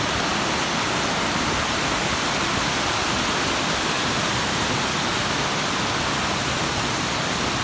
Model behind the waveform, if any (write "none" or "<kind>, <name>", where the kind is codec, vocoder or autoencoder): none